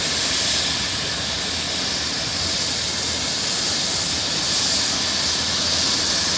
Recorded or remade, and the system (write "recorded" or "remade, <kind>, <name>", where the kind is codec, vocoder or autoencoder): recorded